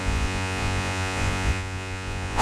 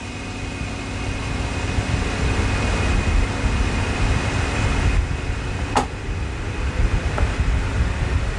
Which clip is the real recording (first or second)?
second